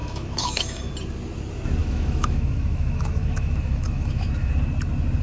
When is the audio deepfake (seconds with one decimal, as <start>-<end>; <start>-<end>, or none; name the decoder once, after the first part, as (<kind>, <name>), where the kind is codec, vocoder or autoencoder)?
0.0-0.9 (autoencoder, DAC-VAE); 1.8-4.5